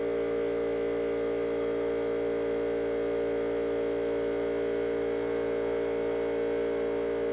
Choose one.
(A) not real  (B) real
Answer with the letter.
B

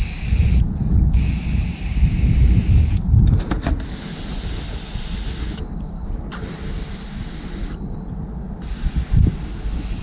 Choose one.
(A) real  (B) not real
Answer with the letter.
A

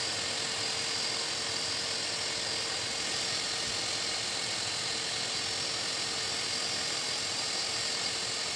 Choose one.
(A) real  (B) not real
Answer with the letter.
A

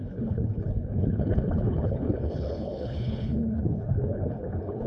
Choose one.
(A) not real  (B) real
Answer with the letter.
A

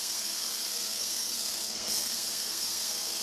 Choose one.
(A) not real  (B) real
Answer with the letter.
A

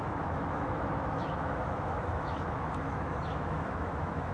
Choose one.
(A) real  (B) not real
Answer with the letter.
B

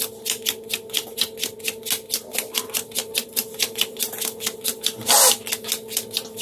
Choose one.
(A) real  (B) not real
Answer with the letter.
A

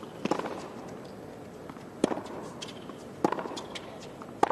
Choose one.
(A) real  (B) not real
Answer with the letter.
A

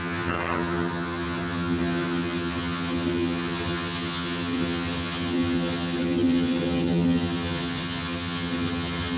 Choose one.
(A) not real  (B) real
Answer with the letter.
A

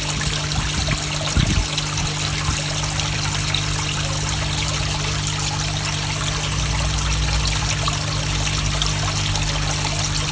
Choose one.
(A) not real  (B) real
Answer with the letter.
B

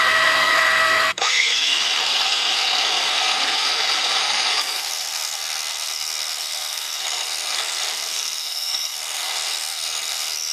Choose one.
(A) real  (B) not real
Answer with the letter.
B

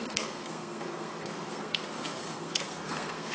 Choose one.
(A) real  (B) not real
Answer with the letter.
B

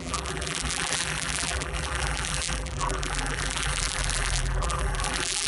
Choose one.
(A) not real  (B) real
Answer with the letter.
A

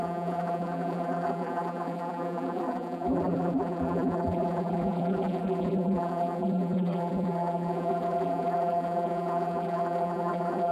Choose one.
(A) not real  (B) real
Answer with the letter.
A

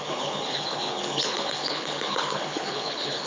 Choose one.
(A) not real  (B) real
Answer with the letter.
A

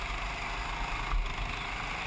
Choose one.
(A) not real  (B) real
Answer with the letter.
B